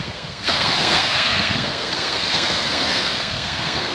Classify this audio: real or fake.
fake